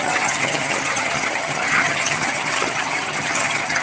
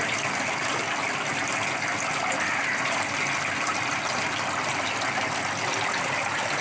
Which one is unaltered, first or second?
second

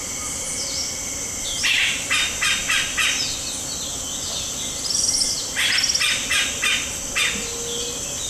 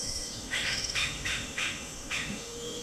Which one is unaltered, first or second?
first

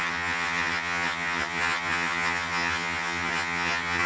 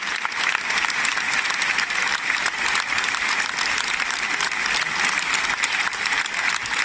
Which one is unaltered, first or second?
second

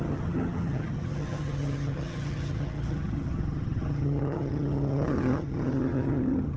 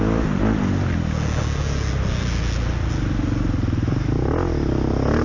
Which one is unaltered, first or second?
second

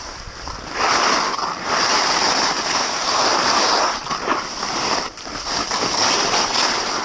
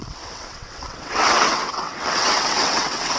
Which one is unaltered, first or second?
first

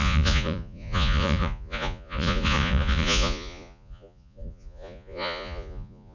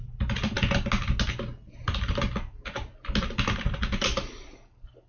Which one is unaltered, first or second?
second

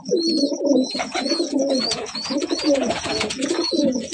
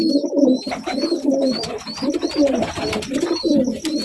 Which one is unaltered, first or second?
second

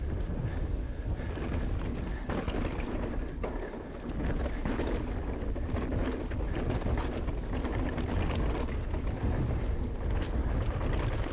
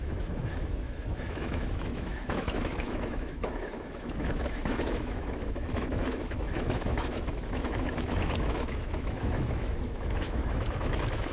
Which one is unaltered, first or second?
first